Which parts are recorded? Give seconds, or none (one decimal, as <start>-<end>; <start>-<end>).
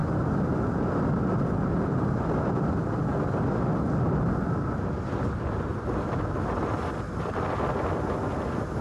0.0-8.8